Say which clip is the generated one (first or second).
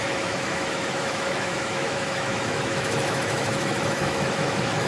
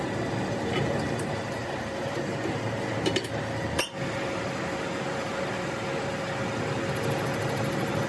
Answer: first